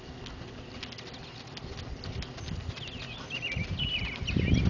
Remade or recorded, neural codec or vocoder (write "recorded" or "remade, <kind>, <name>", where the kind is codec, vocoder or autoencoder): recorded